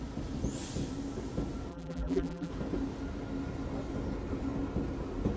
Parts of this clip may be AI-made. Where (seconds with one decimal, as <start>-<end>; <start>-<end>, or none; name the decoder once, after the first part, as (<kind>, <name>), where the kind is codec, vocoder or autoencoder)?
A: 1.7-2.5 (vocoder, BigVGAN v2)